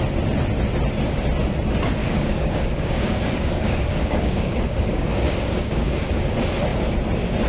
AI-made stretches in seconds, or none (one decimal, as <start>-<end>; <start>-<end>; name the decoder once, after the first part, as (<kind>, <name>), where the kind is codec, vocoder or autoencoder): 2.0-6.0 (codec, DAC)